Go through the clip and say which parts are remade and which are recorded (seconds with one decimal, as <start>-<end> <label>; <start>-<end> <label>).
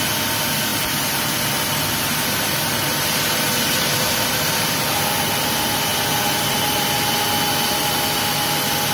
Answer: 0.0-0.7 recorded; 0.7-5.0 remade; 5.0-5.9 recorded; 5.9-6.8 remade; 6.8-8.9 recorded